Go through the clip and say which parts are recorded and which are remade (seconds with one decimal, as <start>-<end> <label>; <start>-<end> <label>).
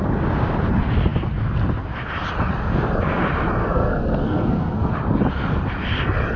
0.0-3.6 recorded; 3.6-4.9 remade; 4.9-6.4 recorded